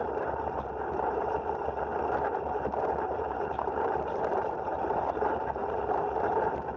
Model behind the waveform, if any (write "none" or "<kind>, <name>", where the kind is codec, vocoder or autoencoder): vocoder, BigVGAN v2